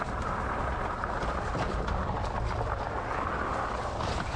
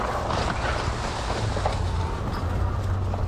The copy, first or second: first